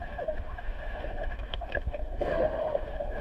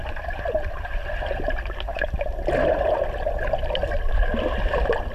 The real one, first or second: second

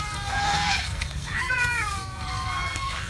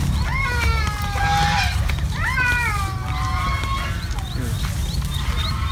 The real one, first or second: second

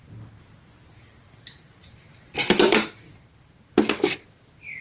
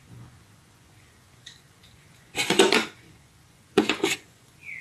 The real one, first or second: first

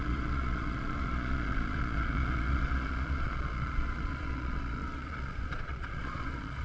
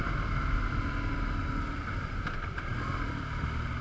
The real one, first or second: second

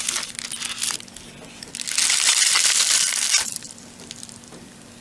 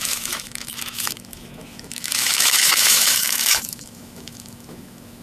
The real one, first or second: first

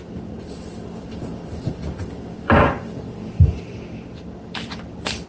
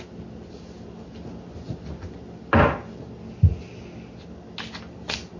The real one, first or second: second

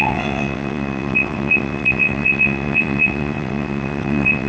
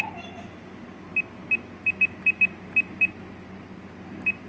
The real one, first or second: second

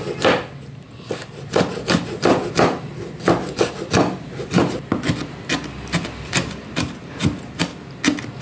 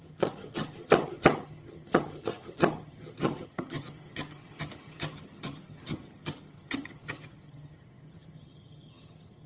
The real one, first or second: first